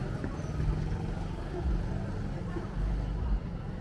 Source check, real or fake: real